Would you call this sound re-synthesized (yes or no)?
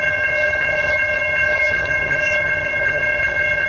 yes